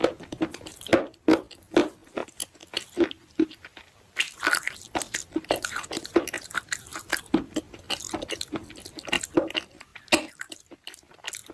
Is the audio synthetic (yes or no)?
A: no